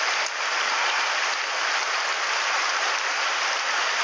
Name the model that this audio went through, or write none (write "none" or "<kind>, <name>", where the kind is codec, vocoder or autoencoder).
none